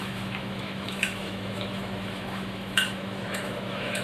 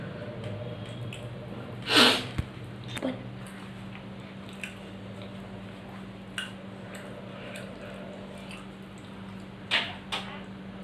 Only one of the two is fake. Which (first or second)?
first